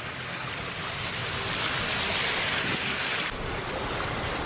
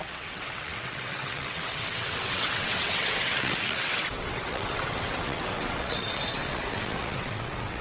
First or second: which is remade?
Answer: second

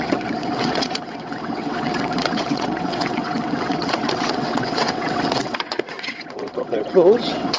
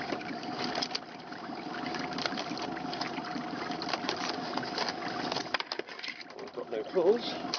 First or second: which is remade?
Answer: first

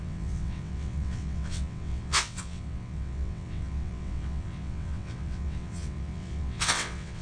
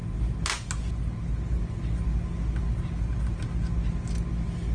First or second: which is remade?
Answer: first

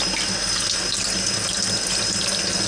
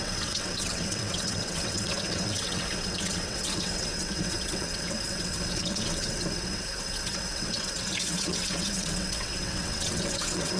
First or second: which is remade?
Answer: second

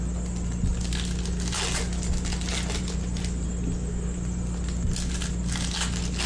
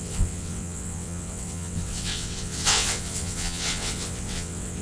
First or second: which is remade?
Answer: second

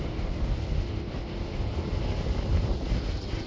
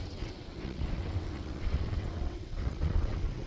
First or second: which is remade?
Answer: second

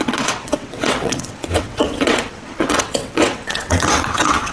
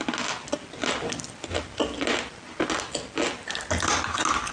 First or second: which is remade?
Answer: first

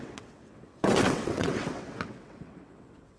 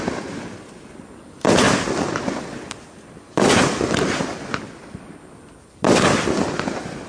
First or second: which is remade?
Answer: first